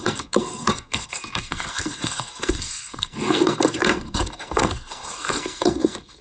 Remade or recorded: remade